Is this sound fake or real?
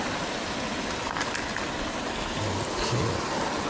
real